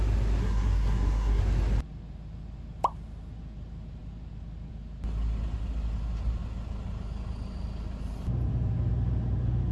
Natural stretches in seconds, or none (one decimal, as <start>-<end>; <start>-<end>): 0.0-0.4; 1.4-9.7